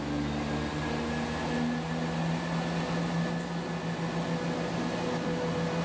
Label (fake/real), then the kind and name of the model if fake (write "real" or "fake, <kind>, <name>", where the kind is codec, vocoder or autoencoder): real